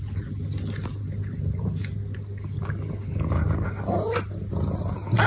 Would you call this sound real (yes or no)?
yes